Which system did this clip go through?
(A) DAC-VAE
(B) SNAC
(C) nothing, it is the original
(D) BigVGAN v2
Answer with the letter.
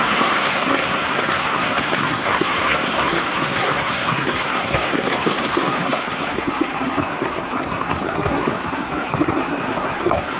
B